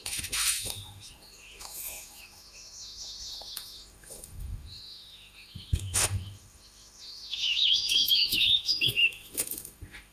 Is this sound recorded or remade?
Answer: remade